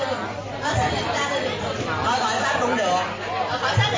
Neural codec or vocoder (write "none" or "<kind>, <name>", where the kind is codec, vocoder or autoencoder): none